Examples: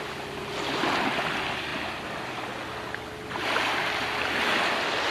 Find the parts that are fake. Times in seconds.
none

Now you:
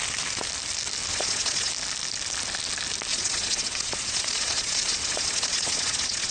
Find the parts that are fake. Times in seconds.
1.1-1.7; 3.1-6.3

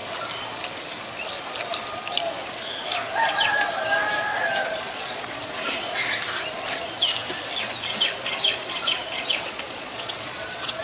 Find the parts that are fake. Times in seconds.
4.6-5.5; 8.5-10.8

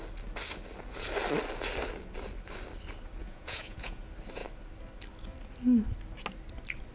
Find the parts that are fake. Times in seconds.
3.2-4.0

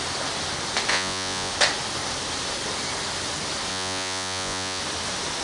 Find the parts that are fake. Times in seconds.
0.9-1.5; 3.7-4.8

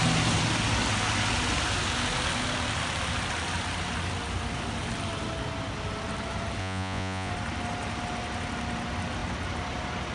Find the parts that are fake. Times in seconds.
6.6-7.3